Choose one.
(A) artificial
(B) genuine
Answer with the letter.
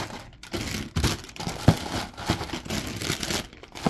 B